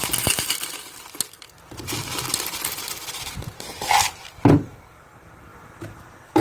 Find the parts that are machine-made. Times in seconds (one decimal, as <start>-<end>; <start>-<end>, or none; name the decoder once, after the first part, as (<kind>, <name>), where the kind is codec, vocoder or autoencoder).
none